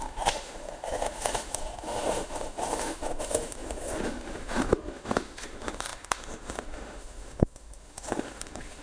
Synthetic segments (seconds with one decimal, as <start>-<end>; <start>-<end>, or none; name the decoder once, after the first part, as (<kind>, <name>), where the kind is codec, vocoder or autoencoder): 0.0-8.8 (autoencoder, DAC-VAE)